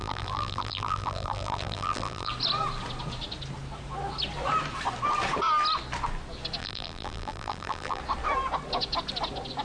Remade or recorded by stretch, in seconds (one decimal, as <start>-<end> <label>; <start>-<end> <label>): 0.0-2.3 remade; 2.3-6.6 recorded; 6.6-8.0 remade; 8.0-9.6 recorded